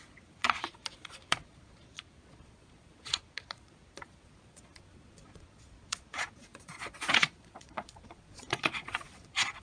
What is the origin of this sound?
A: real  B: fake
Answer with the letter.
B